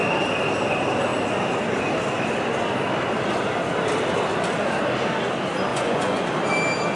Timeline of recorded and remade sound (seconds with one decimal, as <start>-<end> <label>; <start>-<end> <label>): 0.0-5.7 recorded; 5.7-6.3 remade; 6.3-7.0 recorded